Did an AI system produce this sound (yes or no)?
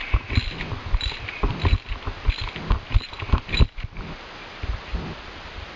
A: no